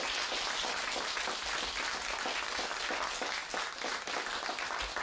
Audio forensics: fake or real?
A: real